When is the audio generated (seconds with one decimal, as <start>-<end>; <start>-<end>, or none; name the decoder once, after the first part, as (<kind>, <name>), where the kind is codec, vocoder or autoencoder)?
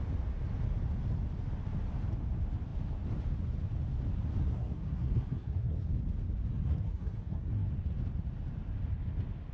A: 4.4-5.9 (codec, SNAC); 6.5-7.7